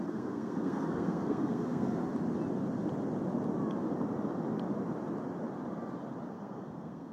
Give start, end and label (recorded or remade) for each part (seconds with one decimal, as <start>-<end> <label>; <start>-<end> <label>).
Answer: 0.0-2.0 remade; 2.0-6.3 recorded; 6.3-7.1 remade